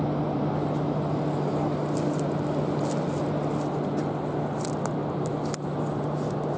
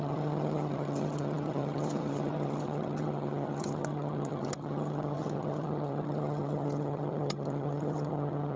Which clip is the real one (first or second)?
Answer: first